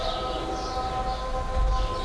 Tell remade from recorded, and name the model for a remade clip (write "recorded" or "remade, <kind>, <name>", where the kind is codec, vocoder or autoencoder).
recorded